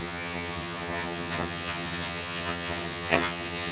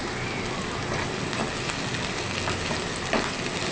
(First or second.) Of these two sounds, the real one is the second